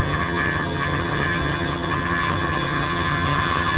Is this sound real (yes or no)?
no